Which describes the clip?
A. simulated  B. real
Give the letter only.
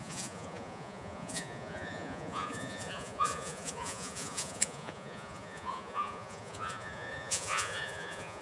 A